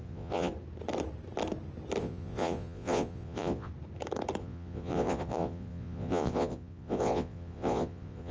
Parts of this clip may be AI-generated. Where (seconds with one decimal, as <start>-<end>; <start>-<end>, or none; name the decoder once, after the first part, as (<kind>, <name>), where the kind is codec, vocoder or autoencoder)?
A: 0.0-0.5 (vocoder, Vocos); 2.0-3.7; 4.4-8.3